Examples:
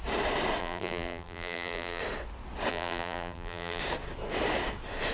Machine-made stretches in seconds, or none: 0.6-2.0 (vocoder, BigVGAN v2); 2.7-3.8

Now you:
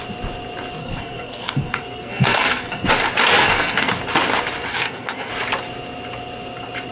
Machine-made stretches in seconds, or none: 0.8-2.9 (codec, SNAC); 3.3-3.9; 4.7-5.3

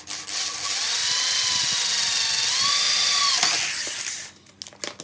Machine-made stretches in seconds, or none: none

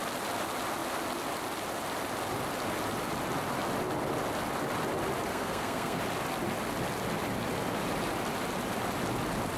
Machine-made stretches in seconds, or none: 5.3-6.0 (codec, SNAC)

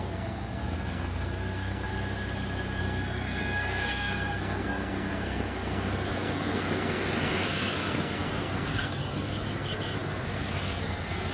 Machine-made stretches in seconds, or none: 0.0-1.9 (codec, SNAC); 2.8-11.3

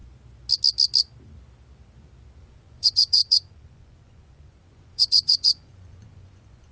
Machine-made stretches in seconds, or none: 2.4-6.7 (vocoder, Vocos)

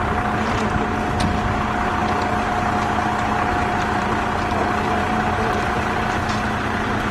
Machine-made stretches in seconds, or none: 5.0-6.3 (vocoder, BigVGAN v2)